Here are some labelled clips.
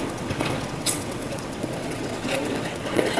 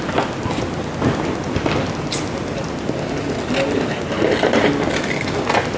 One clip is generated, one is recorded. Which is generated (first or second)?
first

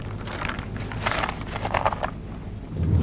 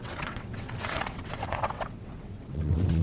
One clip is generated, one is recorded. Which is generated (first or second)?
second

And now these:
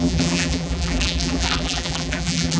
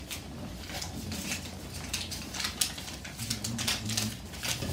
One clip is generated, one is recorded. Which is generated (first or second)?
first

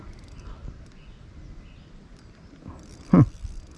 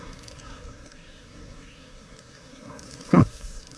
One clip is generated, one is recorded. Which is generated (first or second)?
second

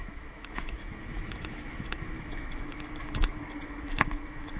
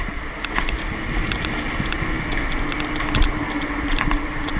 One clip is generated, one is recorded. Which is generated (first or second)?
first